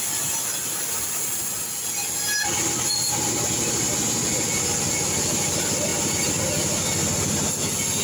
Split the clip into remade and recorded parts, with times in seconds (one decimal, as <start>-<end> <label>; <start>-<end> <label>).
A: 0.0-8.0 recorded